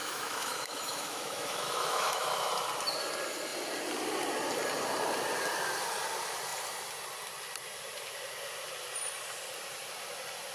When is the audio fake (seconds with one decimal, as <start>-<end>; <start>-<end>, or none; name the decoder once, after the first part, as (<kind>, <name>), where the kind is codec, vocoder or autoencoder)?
0.0-2.5 (autoencoder, DAC-VAE)

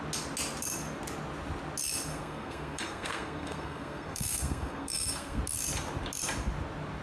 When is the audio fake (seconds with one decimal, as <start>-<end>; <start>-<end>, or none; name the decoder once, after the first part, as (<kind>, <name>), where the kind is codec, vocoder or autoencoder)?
2.1-5.4 (codec, SNAC)

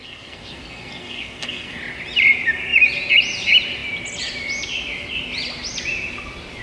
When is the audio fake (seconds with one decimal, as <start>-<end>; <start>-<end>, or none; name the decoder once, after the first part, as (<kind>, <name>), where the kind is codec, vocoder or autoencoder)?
0.0-1.8 (codec, SNAC)